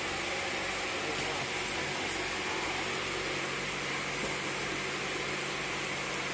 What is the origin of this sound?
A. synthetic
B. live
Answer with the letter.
B